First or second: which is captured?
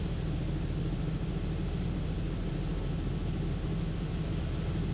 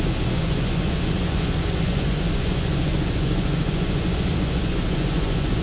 first